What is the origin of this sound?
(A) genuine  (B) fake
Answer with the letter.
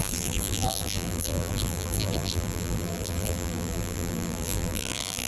B